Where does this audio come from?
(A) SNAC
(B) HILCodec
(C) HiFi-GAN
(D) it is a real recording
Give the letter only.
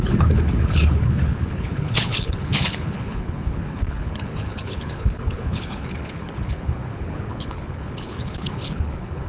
B